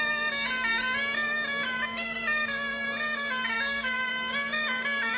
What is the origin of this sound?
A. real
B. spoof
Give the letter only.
A